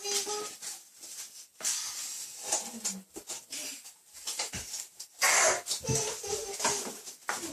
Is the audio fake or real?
real